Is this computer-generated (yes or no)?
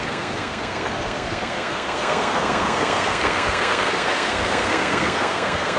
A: yes